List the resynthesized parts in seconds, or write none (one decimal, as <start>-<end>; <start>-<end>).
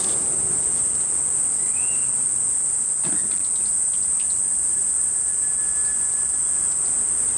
5.8-6.4